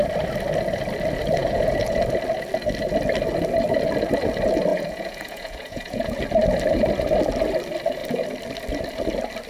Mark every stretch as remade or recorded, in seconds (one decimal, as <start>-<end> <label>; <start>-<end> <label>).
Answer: 0.0-1.4 recorded; 1.4-2.0 remade; 2.0-4.7 recorded; 4.7-6.2 remade; 6.2-9.5 recorded